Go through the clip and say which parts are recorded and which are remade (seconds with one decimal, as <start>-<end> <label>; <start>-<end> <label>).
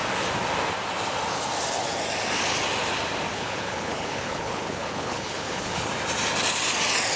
0.0-3.3 recorded; 3.3-5.9 remade; 5.9-7.2 recorded